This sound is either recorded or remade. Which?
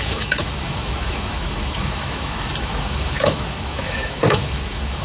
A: remade